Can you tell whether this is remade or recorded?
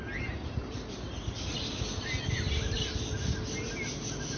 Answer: recorded